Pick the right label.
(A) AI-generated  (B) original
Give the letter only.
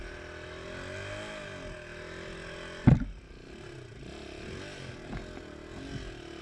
B